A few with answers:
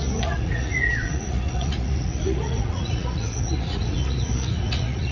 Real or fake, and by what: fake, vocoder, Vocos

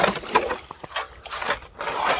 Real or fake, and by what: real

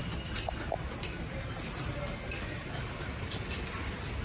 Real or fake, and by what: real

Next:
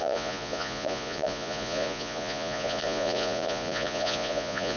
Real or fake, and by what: fake, vocoder, Vocos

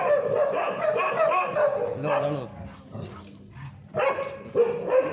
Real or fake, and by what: real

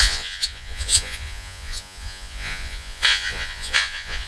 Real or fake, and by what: fake, vocoder, Vocos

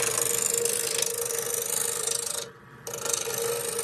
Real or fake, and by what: real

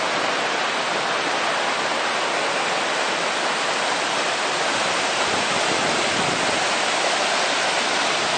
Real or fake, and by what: real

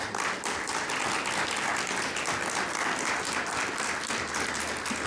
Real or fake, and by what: real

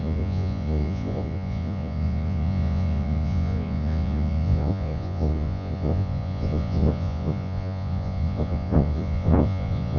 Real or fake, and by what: fake, vocoder, Vocos